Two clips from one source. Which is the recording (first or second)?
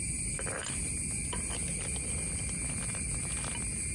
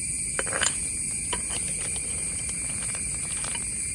first